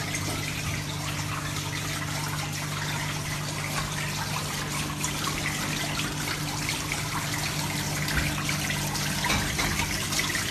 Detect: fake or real real